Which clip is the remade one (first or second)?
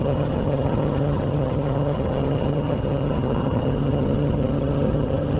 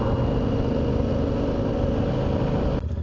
first